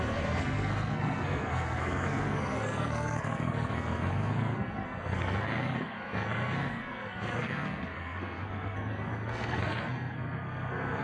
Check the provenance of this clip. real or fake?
fake